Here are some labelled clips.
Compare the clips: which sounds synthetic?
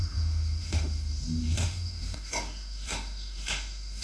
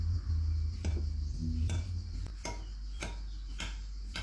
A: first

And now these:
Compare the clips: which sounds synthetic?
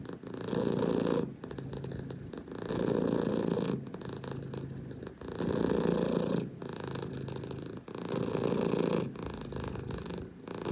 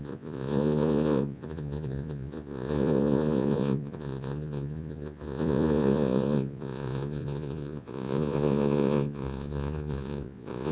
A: second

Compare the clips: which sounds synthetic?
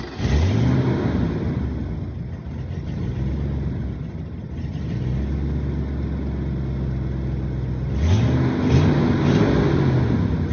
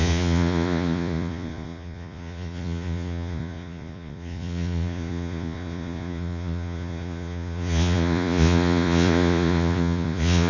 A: second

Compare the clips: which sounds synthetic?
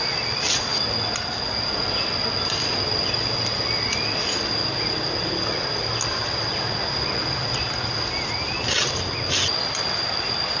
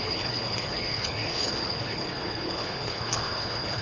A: second